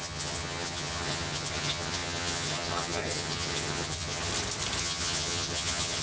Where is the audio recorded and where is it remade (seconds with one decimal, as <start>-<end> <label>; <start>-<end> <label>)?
0.0-4.3 remade; 4.3-4.8 recorded; 4.8-6.0 remade